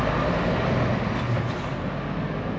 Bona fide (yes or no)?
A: yes